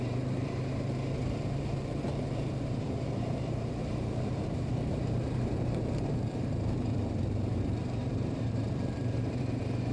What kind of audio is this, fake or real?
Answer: fake